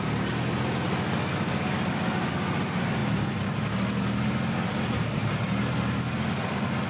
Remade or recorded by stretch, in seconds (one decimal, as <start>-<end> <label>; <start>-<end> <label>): 0.0-6.9 recorded